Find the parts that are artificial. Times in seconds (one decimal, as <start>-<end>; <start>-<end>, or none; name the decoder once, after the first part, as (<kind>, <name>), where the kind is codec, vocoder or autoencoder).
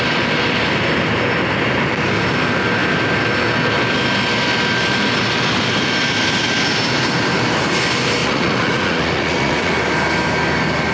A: 8.2-9.7 (vocoder, Vocos)